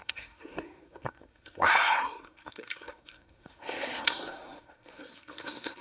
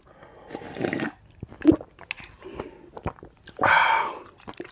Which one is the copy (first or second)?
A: first